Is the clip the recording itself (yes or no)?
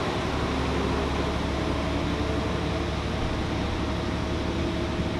yes